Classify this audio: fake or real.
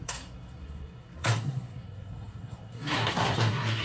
fake